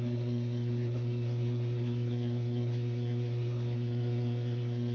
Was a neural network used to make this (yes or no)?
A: yes